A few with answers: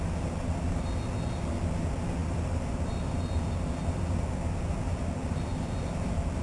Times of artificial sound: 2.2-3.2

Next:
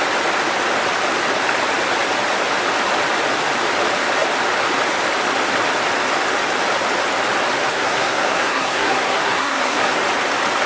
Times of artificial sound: 7.7-10.0

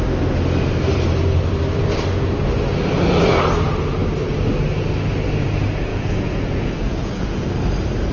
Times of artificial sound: 5.9-7.5

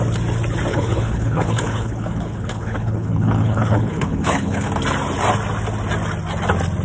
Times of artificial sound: 0.7-4.7

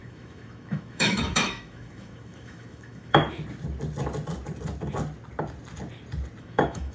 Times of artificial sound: 0.0-3.2; 6.4-6.9